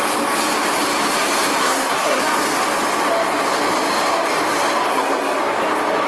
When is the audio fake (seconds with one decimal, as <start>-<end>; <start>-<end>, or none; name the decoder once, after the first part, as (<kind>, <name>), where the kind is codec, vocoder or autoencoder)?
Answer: 1.6-2.2 (codec, SNAC); 4.9-5.4